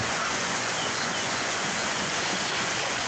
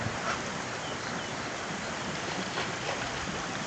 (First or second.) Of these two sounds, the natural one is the second